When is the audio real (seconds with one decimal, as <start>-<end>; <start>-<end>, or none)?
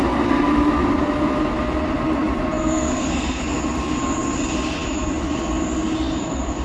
0.0-2.6; 3.4-6.6